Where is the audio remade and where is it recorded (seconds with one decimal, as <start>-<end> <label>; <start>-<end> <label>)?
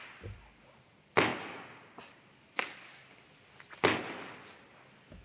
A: 0.0-5.2 recorded